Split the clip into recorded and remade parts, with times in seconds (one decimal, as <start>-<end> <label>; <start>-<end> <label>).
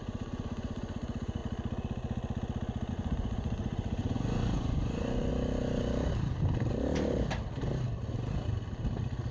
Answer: 0.0-1.4 remade; 1.4-2.9 recorded; 2.9-5.3 remade; 5.3-9.3 recorded